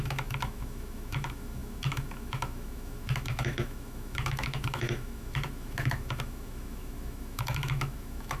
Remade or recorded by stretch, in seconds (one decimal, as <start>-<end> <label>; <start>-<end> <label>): 0.0-8.4 remade